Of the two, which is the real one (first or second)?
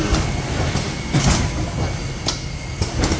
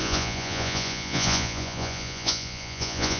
first